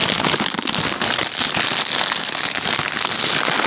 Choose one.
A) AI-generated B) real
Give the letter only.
B